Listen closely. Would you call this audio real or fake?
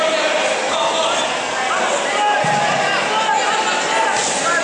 real